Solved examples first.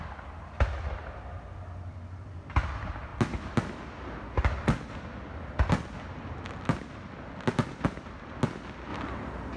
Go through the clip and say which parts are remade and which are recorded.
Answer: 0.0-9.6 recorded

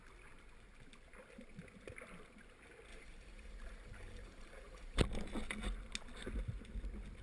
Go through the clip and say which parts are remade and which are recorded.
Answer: 0.0-2.9 recorded; 2.9-5.0 remade; 5.0-7.2 recorded

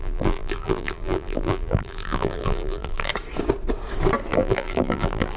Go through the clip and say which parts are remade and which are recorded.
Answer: 0.0-3.1 remade; 3.1-4.3 recorded; 4.3-5.4 remade